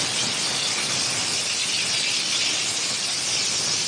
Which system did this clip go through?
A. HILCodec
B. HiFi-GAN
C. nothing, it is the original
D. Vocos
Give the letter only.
C